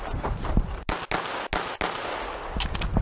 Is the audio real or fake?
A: real